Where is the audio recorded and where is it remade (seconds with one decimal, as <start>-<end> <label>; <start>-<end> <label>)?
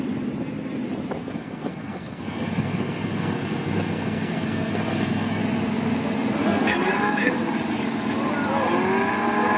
0.0-1.2 recorded; 1.2-5.4 remade; 5.4-6.4 recorded; 6.4-7.3 remade; 7.3-9.6 recorded